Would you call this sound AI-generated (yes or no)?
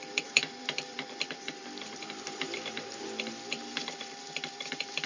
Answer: yes